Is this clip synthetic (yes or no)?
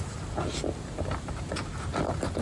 no